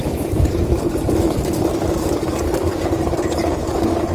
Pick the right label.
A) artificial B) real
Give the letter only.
A